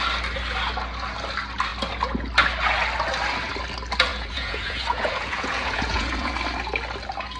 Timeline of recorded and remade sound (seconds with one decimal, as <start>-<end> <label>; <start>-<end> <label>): 0.0-4.1 recorded; 4.1-6.3 remade; 6.3-7.4 recorded